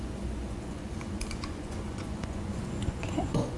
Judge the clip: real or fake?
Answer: fake